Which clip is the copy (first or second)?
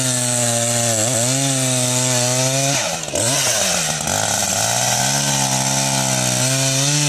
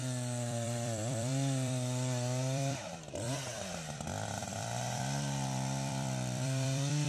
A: second